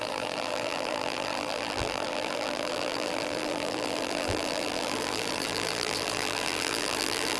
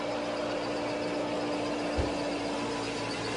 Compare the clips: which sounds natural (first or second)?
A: second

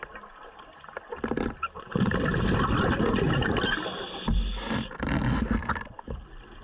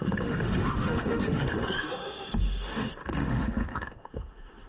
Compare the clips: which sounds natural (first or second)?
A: first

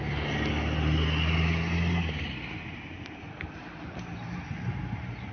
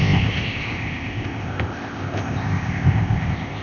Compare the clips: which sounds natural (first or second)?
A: first